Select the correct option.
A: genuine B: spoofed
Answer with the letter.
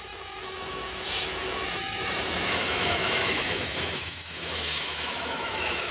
B